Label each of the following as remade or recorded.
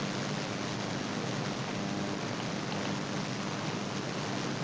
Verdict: recorded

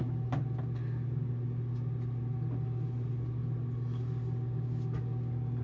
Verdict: recorded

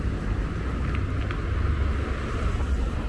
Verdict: recorded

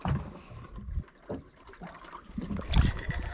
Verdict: recorded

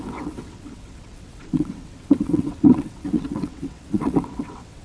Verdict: remade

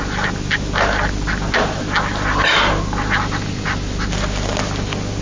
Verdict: recorded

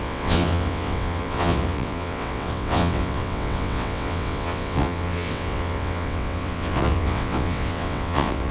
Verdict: remade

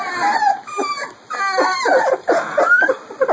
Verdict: recorded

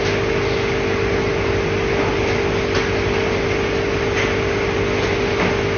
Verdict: recorded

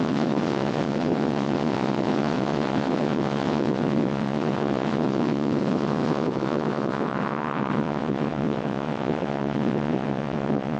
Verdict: remade